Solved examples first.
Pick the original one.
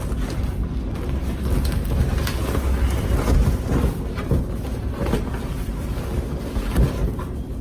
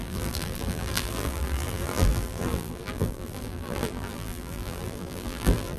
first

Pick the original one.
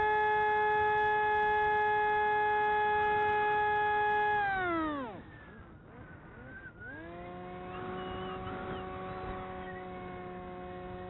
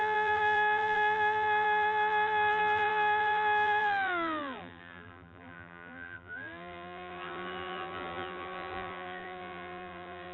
first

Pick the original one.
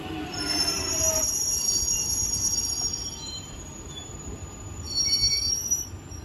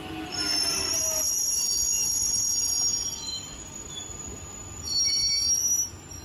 second